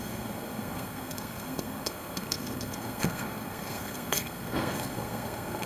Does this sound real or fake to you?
fake